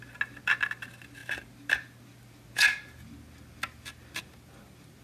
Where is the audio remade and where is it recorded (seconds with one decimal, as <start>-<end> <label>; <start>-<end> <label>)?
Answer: 0.0-5.0 recorded